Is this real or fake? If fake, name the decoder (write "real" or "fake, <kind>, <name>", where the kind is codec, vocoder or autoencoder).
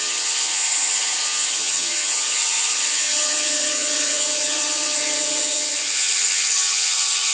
fake, vocoder, HiFi-GAN